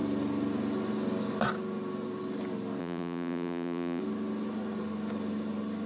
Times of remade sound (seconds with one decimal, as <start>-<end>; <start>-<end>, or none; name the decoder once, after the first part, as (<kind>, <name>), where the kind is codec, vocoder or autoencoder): 2.8-4.0 (vocoder, BigVGAN v2)